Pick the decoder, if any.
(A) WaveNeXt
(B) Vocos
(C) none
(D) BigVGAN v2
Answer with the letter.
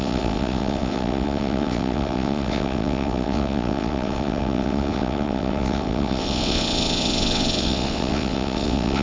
A